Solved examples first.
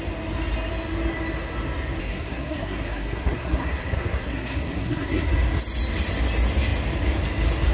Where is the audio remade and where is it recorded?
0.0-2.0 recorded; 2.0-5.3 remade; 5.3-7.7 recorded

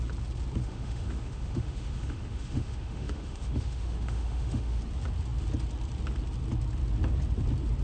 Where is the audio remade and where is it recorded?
0.0-0.6 recorded; 0.6-4.8 remade; 4.8-7.8 recorded

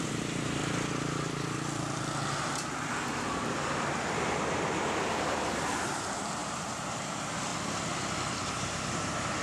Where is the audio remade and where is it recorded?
0.0-0.6 remade; 0.6-4.4 recorded; 4.4-7.5 remade; 7.5-8.3 recorded; 8.3-9.4 remade

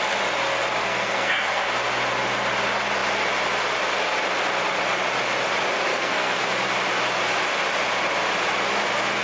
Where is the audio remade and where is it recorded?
0.0-0.8 recorded; 0.8-1.7 remade; 1.7-5.9 recorded; 5.9-6.4 remade; 6.4-9.2 recorded

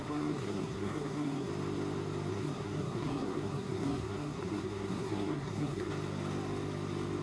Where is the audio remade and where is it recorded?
0.0-1.5 remade; 1.5-2.3 recorded; 2.3-5.9 remade; 5.9-7.2 recorded